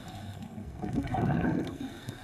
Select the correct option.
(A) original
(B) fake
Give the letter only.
B